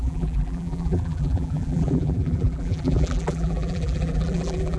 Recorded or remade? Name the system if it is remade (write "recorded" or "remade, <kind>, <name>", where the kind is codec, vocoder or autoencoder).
remade, vocoder, BigVGAN v2